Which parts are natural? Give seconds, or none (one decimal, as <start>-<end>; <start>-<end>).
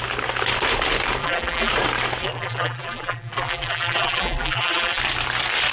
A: 0.0-1.2; 1.7-2.2; 5.0-5.7